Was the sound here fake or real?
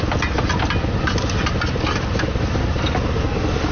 real